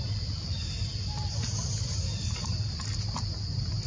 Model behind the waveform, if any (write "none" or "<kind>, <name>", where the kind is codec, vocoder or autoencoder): none